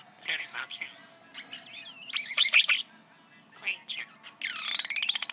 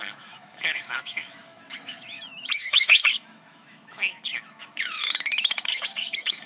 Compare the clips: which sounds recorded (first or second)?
first